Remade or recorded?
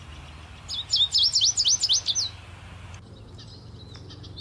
recorded